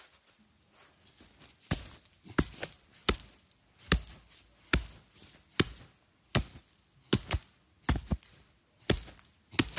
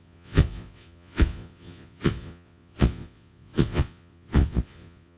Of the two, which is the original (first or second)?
first